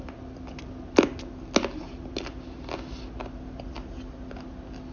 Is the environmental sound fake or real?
real